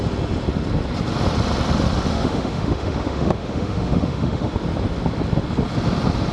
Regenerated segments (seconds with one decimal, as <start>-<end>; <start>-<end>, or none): 2.1-4.5